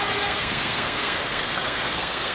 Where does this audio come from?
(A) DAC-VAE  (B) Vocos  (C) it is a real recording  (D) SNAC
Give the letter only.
D